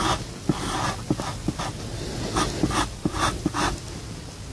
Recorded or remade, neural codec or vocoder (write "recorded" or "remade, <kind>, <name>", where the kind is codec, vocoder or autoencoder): recorded